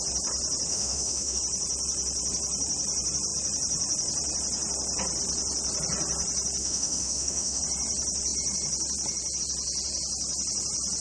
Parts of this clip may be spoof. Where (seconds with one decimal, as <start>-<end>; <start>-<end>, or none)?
0.7-1.4; 6.6-7.6